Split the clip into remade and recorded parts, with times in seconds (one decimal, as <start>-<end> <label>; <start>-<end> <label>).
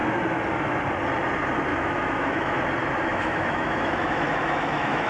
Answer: 0.0-1.7 recorded; 1.7-2.6 remade; 2.6-3.1 recorded; 3.1-5.1 remade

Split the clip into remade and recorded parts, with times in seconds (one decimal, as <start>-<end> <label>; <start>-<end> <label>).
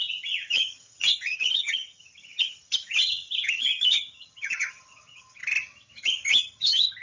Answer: 0.0-5.4 remade; 5.4-6.0 recorded; 6.0-7.0 remade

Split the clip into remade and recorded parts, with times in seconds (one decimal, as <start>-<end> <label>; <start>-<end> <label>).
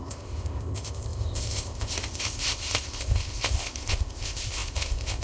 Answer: 0.0-5.2 remade